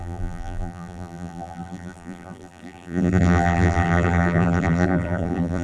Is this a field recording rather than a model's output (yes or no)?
no